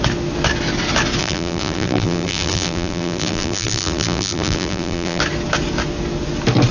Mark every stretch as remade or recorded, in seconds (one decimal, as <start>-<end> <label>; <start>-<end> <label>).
0.0-1.2 recorded; 1.2-5.2 remade; 5.2-6.7 recorded